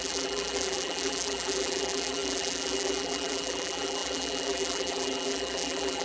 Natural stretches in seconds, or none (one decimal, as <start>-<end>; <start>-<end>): none